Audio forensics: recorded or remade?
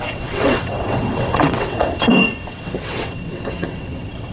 remade